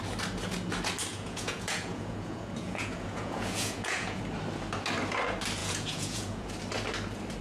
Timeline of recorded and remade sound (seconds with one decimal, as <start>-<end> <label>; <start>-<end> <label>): 0.0-1.1 recorded; 1.1-4.2 remade; 4.2-5.6 recorded; 5.6-6.5 remade; 6.5-7.4 recorded